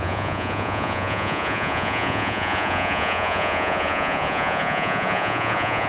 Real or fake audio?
fake